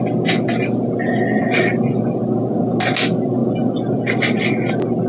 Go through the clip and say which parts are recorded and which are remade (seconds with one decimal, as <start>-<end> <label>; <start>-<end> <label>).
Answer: 0.0-5.1 recorded